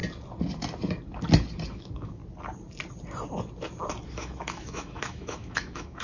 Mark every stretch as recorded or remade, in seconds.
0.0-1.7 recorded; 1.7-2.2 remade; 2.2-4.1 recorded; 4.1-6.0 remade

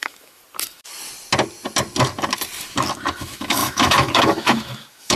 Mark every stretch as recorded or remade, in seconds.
0.0-0.4 remade; 0.4-3.2 recorded; 3.2-5.2 remade

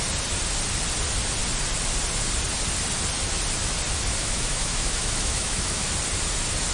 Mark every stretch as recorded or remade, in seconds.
0.0-4.2 recorded; 4.2-5.9 remade; 5.9-6.7 recorded